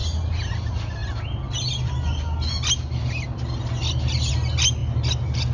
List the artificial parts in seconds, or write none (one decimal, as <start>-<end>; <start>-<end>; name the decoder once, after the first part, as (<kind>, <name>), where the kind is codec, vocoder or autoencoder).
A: none